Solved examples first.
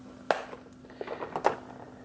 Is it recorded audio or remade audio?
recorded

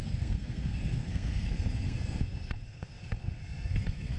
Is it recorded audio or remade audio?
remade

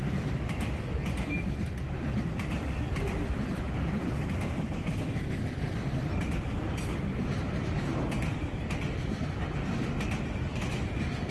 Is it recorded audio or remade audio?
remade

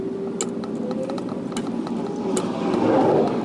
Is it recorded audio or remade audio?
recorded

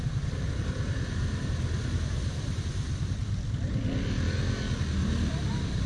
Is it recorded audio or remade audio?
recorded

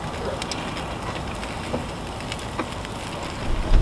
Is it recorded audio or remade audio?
recorded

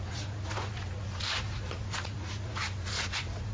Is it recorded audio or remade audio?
remade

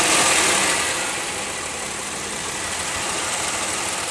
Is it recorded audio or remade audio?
recorded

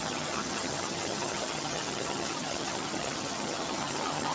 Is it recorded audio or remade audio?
remade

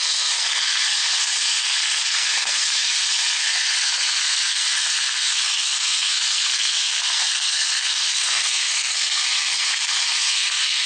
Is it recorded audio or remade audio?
remade